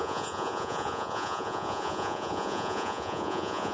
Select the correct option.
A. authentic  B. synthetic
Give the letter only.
B